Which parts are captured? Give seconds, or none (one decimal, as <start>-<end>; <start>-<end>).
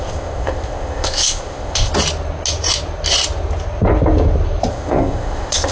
1.9-4.7